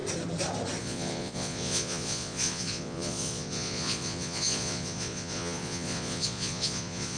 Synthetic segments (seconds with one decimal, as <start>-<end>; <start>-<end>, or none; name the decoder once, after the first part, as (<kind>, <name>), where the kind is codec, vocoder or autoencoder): 0.8-7.2 (vocoder, Vocos)